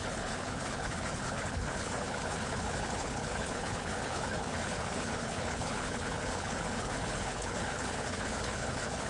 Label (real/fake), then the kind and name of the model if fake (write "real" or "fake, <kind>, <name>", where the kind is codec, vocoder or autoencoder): fake, codec, HILCodec